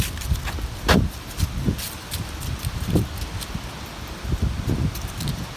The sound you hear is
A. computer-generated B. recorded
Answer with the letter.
B